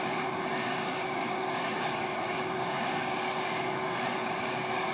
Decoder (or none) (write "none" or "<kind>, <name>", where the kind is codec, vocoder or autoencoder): codec, DAC